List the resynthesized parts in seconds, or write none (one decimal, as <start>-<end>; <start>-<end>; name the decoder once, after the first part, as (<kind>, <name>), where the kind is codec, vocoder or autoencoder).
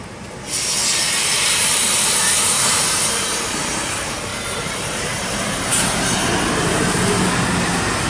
0.0-0.8 (vocoder, BigVGAN v2); 1.4-4.3; 4.8-8.1